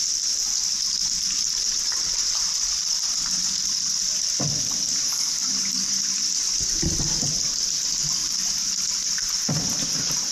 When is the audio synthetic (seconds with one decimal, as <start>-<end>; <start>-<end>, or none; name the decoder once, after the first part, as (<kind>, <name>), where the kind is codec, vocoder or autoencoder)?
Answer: 1.7-3.9 (vocoder, BigVGAN v2); 5.4-6.0; 8.2-9.4